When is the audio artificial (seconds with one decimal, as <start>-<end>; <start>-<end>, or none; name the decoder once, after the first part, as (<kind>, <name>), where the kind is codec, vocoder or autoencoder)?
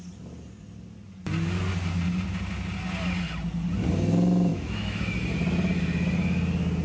4.5-5.0 (autoencoder, DAC-VAE)